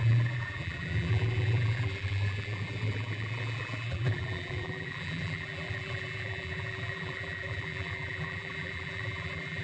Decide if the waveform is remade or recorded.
remade